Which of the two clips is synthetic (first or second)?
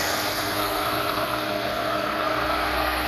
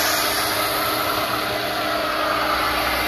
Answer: first